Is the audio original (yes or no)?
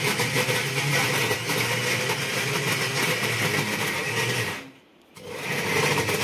yes